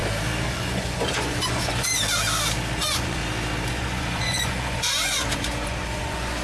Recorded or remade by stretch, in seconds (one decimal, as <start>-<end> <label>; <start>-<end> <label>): 0.0-0.5 recorded; 0.5-1.9 remade; 1.9-2.8 recorded; 2.8-3.2 remade; 3.2-3.7 recorded; 3.7-6.4 remade